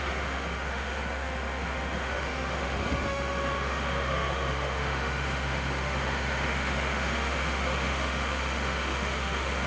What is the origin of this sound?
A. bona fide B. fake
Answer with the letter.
B